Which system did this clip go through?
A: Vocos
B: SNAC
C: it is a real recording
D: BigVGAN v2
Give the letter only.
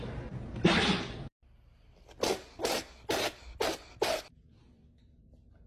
C